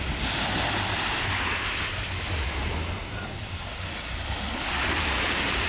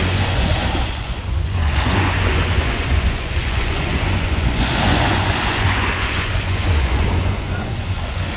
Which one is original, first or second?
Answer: first